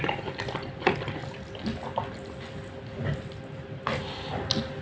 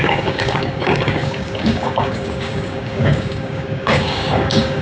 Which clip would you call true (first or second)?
first